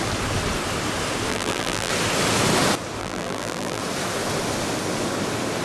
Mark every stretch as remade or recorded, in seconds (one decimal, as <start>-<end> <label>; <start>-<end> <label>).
0.0-1.3 recorded; 1.3-1.9 remade; 1.9-3.0 recorded; 3.0-3.8 remade; 3.8-5.6 recorded